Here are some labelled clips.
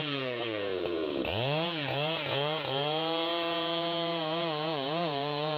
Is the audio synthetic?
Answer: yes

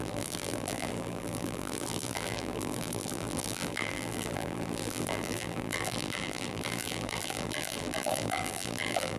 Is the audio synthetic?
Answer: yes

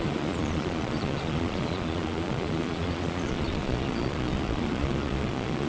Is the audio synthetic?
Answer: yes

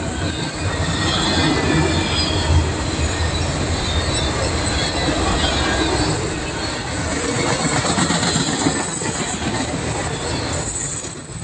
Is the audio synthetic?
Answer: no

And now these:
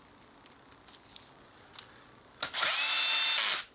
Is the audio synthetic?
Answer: no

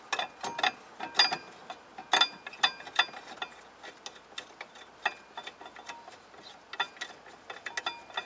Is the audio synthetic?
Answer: no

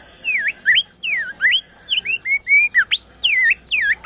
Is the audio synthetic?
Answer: no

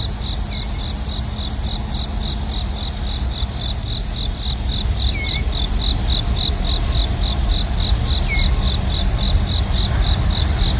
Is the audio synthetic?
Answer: no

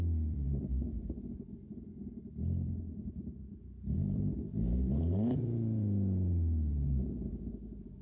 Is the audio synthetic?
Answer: yes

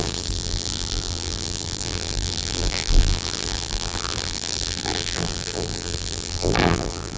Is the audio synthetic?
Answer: yes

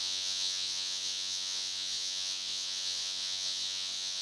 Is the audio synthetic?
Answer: yes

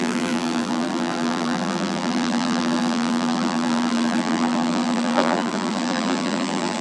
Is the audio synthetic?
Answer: yes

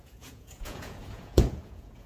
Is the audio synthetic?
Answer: yes